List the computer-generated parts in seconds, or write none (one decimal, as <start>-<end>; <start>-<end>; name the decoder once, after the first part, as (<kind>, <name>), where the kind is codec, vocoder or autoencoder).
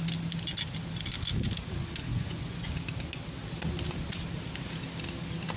2.1-2.7 (vocoder, Vocos)